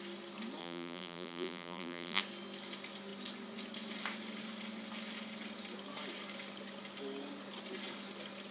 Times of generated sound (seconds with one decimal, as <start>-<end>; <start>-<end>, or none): 0.6-2.2

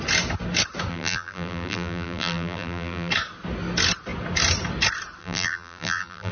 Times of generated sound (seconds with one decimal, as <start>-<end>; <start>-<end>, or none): 0.9-3.1; 5.2-6.3